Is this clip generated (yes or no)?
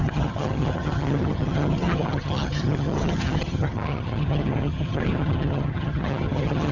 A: yes